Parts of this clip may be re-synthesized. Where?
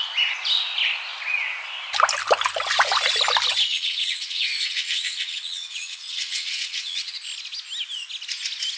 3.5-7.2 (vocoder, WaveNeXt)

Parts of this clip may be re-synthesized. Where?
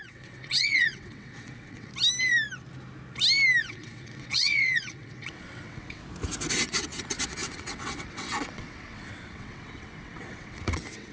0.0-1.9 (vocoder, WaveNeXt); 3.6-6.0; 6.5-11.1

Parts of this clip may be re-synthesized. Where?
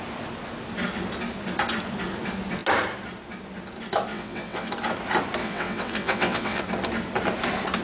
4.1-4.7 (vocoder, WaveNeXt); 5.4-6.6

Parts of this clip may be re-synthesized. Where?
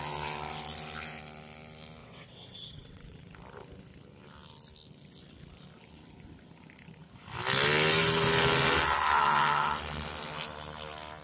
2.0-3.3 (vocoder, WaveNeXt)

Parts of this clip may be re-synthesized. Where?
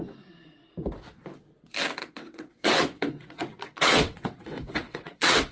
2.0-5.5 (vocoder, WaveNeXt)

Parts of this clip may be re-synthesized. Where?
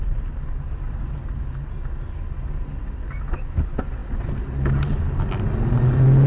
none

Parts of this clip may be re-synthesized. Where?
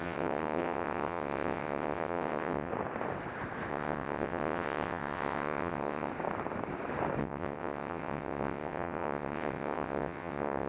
0.0-2.7 (vocoder, WaveNeXt); 3.7-6.1; 7.2-10.7